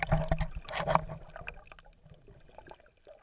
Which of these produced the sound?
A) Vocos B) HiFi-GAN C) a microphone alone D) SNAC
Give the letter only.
C